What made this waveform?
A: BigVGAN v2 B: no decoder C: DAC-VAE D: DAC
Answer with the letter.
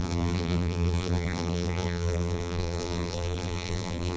A